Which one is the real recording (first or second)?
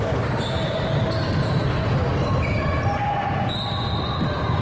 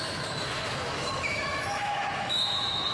first